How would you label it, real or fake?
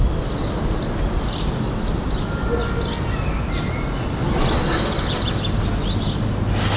real